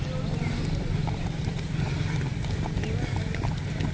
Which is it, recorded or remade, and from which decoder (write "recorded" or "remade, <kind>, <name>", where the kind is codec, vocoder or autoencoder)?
recorded